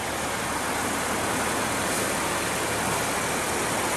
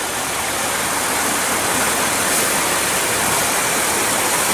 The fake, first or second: second